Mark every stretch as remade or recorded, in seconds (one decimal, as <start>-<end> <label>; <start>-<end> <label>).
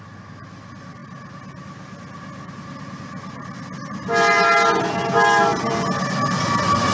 0.0-6.9 recorded